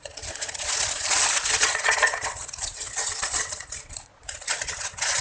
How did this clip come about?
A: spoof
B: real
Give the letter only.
A